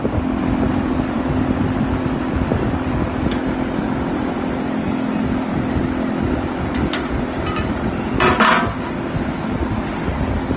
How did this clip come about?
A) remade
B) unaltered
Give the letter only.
B